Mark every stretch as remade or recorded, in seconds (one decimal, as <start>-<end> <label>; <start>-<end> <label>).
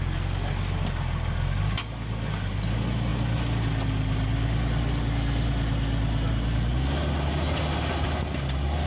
0.0-8.9 recorded